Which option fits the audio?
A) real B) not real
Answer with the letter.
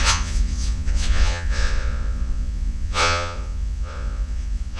B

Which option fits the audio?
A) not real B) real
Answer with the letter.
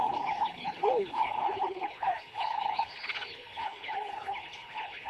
A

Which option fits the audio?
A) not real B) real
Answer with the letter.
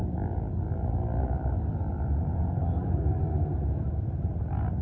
B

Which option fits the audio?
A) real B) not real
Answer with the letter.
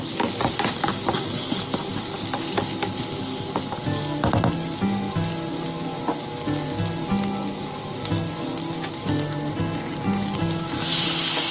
A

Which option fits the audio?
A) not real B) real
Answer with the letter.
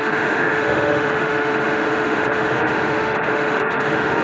A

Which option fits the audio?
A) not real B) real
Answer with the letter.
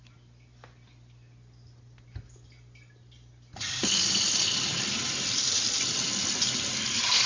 B